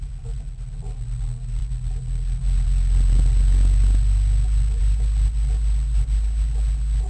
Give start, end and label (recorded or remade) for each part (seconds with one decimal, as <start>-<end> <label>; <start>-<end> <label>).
0.0-7.1 recorded